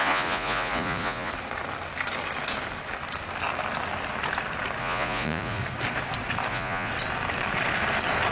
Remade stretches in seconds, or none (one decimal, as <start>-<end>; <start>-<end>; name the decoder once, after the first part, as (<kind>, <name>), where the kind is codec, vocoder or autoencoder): 0.0-1.3 (vocoder, Vocos); 4.8-5.6; 6.5-6.9